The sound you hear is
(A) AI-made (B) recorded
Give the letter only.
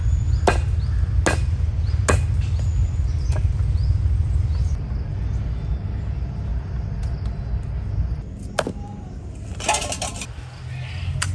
B